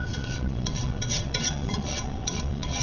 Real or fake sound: fake